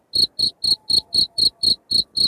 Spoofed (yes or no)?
no